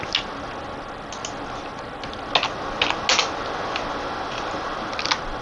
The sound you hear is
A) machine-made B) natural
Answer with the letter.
B